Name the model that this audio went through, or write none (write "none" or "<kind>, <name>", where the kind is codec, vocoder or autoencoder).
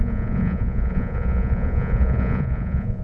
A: vocoder, Vocos